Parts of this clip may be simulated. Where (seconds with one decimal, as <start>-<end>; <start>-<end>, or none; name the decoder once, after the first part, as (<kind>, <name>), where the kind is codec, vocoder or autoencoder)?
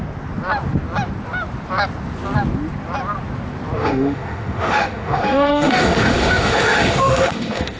3.8-7.8 (autoencoder, DAC-VAE)